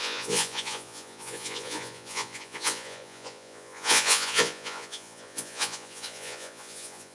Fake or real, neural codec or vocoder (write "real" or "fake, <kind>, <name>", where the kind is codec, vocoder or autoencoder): fake, vocoder, Vocos